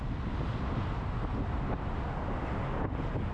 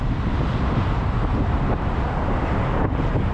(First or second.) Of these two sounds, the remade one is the second